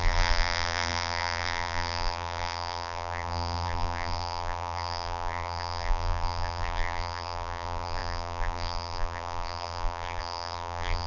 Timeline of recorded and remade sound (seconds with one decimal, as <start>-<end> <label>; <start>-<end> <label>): 0.0-11.1 remade

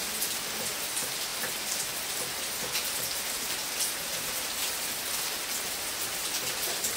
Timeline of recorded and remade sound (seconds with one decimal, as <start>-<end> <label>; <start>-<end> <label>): 0.0-7.0 recorded

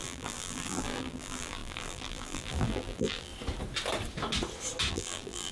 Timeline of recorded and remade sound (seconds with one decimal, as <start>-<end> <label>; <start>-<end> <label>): 0.0-3.3 remade; 3.3-4.9 recorded; 4.9-5.5 remade

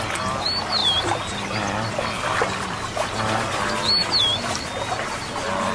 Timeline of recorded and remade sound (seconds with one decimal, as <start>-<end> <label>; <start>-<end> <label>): 0.0-5.7 recorded